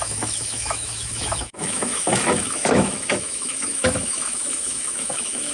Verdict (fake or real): fake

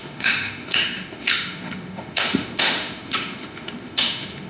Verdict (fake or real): fake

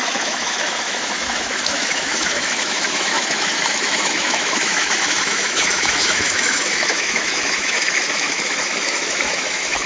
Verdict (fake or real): fake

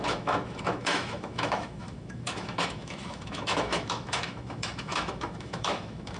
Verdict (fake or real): fake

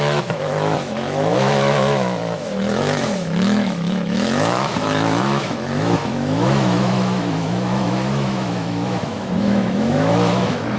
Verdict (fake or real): fake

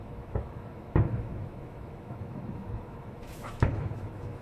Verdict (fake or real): fake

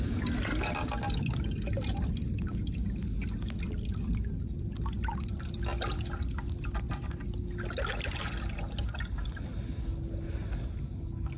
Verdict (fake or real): real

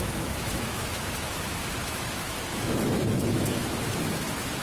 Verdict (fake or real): fake